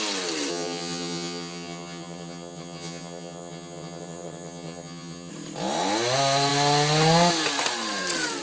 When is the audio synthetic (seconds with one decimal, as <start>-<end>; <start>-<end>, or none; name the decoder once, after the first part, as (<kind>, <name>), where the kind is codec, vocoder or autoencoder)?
0.5-5.3 (vocoder, HiFi-GAN)